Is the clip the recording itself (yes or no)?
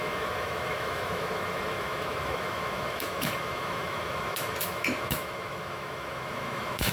no